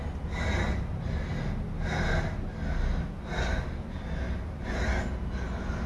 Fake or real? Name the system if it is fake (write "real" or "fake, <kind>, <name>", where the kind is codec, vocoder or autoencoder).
real